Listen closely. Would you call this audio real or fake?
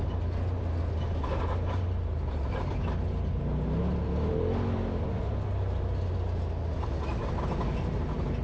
real